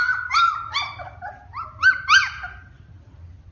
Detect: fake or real real